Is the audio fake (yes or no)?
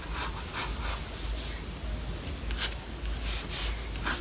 no